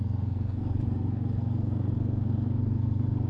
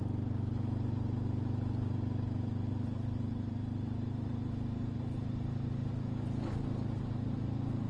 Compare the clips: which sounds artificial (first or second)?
first